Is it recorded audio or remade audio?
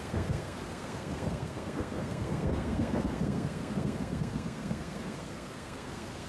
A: remade